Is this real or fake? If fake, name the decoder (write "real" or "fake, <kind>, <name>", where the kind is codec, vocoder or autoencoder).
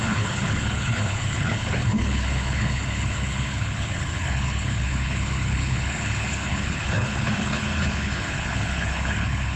fake, codec, HILCodec